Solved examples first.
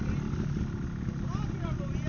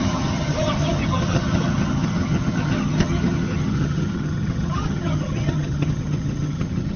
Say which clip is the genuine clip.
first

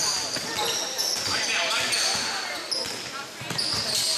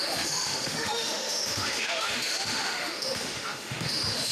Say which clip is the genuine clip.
first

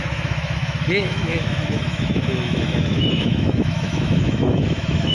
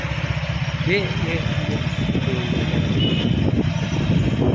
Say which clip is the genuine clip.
second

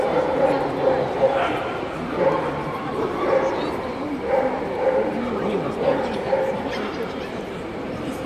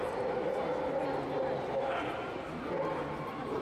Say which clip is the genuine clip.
second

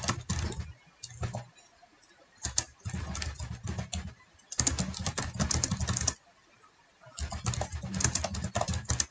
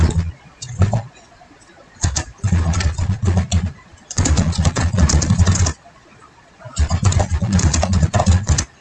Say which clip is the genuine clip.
first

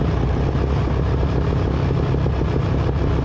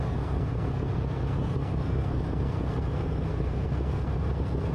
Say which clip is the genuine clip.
first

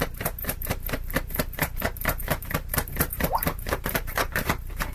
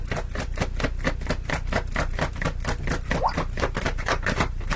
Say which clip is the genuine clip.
second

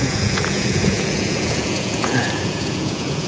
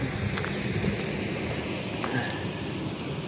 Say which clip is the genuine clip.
second